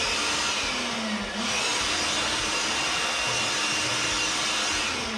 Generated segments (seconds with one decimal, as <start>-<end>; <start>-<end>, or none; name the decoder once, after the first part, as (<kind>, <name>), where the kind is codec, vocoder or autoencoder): 1.7-3.9 (vocoder, BigVGAN v2)